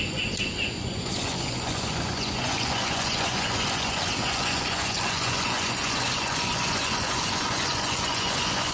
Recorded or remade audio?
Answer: remade